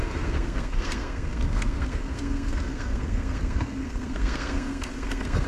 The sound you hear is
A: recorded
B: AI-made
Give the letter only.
B